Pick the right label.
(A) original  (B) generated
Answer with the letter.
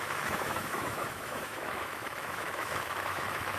B